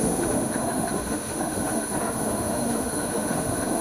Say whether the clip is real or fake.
fake